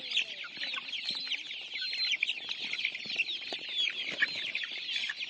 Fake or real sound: real